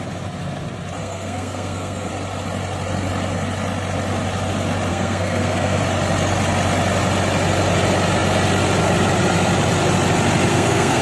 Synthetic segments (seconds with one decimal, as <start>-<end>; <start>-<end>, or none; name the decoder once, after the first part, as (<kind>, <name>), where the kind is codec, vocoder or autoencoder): 1.0-2.1 (codec, SNAC); 4.9-5.8; 10.5-11.0